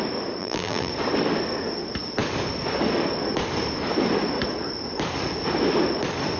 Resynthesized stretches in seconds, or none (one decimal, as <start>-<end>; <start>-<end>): 0.4-0.9